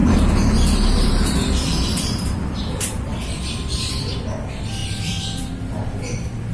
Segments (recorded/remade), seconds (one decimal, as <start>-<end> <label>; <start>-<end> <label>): 0.0-3.9 remade; 3.9-4.8 recorded; 4.8-6.5 remade